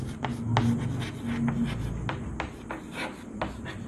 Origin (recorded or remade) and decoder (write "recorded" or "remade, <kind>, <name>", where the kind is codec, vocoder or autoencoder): recorded